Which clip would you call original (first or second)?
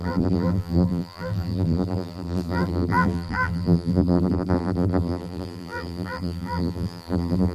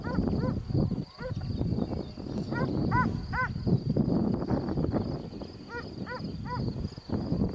second